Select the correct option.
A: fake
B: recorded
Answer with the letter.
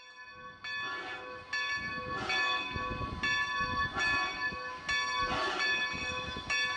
B